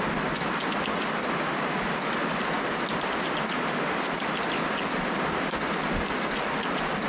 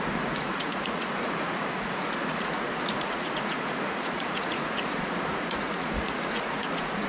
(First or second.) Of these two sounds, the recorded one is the first